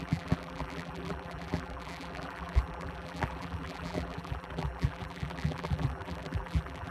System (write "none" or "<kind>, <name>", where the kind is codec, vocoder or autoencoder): vocoder, BigVGAN v2